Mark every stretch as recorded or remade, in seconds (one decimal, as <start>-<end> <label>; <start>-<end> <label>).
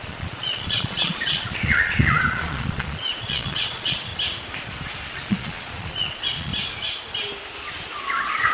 0.0-4.1 remade; 4.1-5.1 recorded; 5.1-6.5 remade; 6.5-8.0 recorded; 8.0-8.5 remade